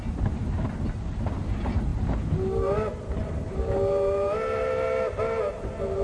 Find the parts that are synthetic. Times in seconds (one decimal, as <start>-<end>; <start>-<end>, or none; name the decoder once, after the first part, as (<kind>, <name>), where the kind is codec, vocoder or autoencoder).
none